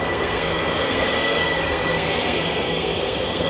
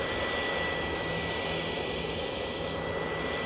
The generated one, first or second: first